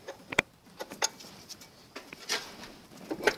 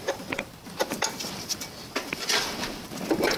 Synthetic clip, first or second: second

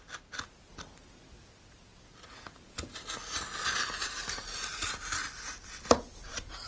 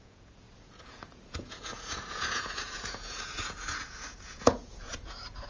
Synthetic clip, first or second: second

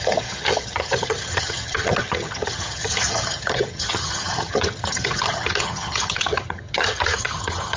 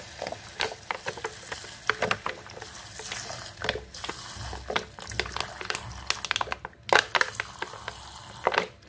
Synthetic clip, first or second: first